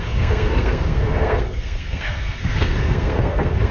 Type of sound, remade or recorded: remade